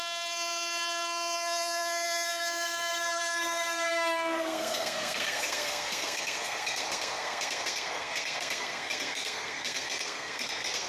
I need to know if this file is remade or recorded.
remade